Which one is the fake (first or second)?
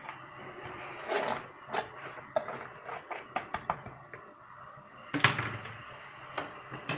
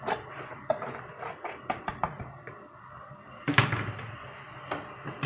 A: second